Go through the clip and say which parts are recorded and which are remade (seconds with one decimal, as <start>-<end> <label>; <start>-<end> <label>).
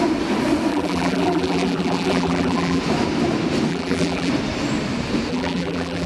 0.0-0.7 recorded; 0.7-2.8 remade; 2.8-3.7 recorded; 3.7-4.3 remade; 4.3-5.3 recorded; 5.3-6.1 remade